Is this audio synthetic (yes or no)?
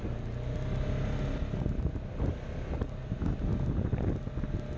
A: no